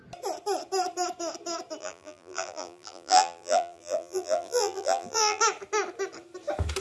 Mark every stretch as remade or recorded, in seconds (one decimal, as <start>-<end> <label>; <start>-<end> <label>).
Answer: 0.0-1.8 recorded; 1.8-5.4 remade; 5.4-6.8 recorded